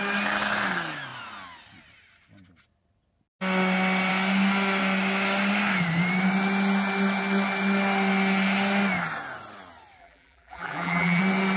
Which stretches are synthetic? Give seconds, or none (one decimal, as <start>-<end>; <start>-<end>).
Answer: 10.0-11.2